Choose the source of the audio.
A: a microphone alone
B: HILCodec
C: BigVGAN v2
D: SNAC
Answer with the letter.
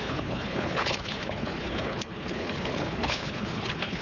B